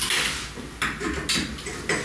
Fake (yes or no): no